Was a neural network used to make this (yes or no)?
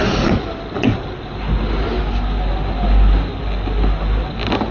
no